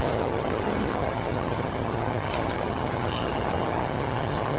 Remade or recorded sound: remade